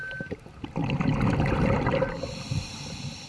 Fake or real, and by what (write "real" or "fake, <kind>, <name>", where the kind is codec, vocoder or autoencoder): fake, vocoder, BigVGAN v2